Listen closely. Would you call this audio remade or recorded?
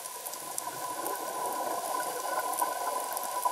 recorded